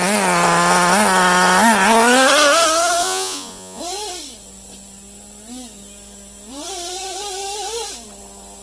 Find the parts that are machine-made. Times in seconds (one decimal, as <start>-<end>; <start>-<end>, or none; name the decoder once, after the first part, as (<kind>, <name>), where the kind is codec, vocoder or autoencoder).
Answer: 3.0-3.8 (vocoder, Vocos)